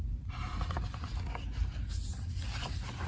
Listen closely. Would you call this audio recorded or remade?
recorded